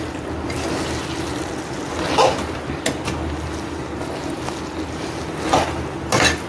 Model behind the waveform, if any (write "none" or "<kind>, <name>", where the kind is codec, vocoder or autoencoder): none